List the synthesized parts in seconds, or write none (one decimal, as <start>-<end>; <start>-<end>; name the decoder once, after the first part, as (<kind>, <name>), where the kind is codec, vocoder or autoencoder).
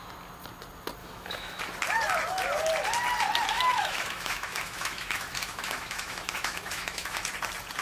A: 1.0-1.6 (autoencoder, DAC-VAE); 3.5-7.3